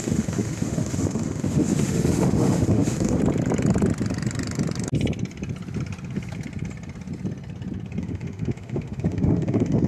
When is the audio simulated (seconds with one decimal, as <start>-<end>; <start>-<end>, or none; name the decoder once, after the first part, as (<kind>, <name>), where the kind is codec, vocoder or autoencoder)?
0.0-3.2 (autoencoder, DAC-VAE); 8.0-9.9